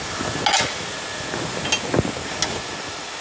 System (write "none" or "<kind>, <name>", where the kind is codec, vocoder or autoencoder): none